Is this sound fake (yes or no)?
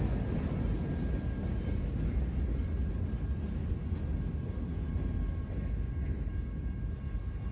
no